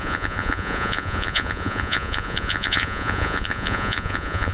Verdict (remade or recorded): remade